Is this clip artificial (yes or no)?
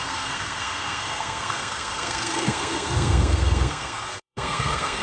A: yes